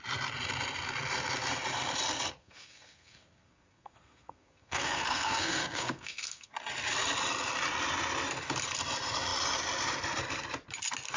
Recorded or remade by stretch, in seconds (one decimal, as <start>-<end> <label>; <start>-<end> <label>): 0.0-2.4 recorded; 2.4-6.5 remade; 6.5-11.2 recorded

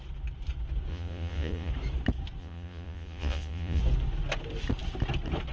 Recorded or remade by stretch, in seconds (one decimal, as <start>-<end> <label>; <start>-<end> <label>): 0.0-0.9 recorded; 0.9-1.7 remade; 1.7-2.4 recorded; 2.4-3.8 remade; 3.8-5.5 recorded

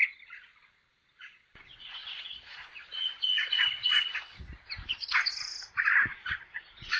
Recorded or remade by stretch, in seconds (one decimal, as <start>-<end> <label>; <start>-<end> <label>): 0.0-0.9 recorded; 0.9-4.2 remade; 4.2-6.1 recorded; 6.1-7.0 remade